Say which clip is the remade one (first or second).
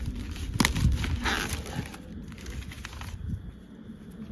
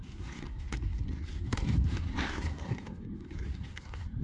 second